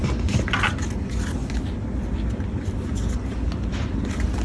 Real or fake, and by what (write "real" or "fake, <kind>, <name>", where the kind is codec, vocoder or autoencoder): real